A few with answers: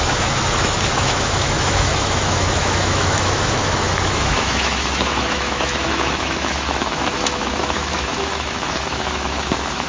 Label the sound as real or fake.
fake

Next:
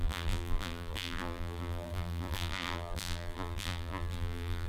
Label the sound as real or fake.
fake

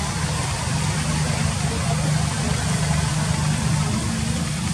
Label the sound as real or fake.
real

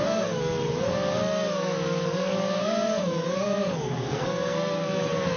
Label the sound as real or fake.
fake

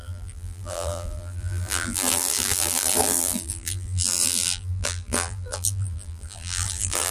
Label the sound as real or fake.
fake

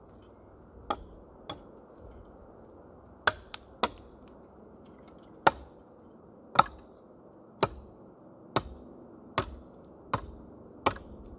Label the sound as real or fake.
real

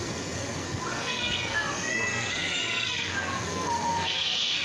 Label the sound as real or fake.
fake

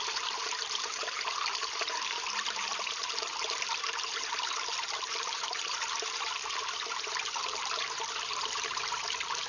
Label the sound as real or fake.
fake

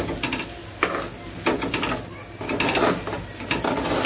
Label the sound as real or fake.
real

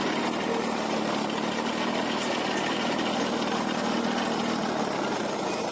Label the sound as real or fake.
real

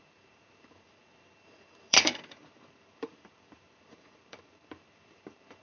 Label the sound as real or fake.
fake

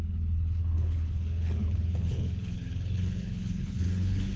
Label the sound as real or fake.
fake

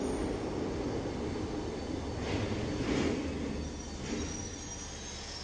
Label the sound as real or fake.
real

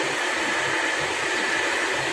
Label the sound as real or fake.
real